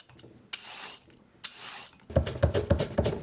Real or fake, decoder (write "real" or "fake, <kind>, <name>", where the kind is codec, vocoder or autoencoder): real